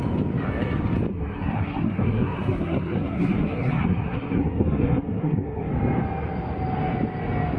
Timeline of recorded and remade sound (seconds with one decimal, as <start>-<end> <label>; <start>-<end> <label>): 0.0-1.1 recorded; 1.1-5.7 remade; 5.7-7.6 recorded